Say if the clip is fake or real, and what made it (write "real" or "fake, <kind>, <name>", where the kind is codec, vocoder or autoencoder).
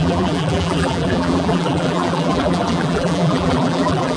fake, vocoder, BigVGAN v2